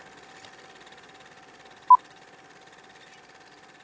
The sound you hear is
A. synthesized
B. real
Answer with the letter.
B